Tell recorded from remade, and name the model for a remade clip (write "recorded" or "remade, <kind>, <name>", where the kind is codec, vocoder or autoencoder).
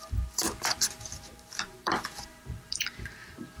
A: remade, vocoder, BigVGAN v2